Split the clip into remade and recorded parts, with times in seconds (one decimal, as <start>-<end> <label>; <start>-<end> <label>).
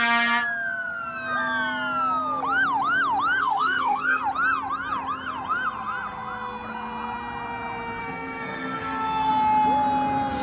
0.0-3.4 recorded; 3.4-4.2 remade; 4.2-8.0 recorded; 8.0-9.3 remade; 9.3-10.4 recorded